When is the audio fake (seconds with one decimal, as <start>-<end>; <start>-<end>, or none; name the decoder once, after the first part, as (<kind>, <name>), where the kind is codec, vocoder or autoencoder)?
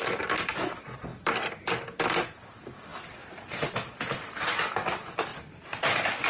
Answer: 1.1-1.7 (vocoder, BigVGAN v2); 2.9-3.7; 5.3-6.3